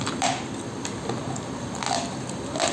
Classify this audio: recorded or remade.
recorded